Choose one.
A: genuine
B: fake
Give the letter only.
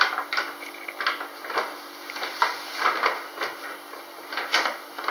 A